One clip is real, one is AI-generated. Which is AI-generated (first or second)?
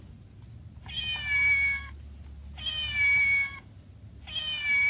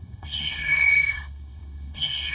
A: second